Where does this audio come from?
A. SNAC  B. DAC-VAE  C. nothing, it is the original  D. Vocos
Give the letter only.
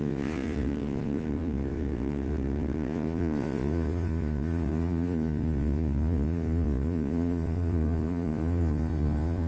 D